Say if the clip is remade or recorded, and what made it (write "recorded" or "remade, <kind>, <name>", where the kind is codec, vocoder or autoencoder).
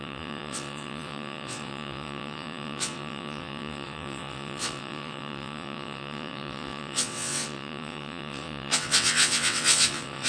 remade, vocoder, WaveNeXt